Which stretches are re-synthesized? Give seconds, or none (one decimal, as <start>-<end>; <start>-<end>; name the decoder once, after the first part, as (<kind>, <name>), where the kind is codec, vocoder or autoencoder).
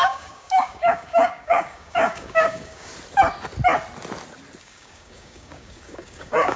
0.0-2.9 (codec, DAC); 4.6-6.6